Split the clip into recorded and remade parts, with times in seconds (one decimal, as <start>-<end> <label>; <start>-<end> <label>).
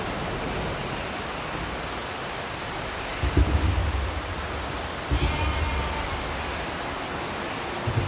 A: 0.0-8.1 recorded